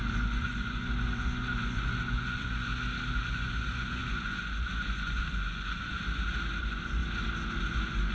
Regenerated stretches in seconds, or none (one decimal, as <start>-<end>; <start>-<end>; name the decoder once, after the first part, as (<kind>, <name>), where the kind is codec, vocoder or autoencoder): 0.0-2.7 (vocoder, Vocos); 3.3-5.9; 6.6-7.0; 7.6-8.1